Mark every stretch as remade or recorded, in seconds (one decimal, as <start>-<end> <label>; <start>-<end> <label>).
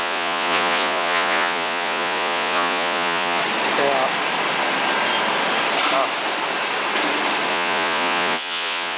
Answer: 0.0-3.4 remade; 3.4-7.5 recorded; 7.5-9.0 remade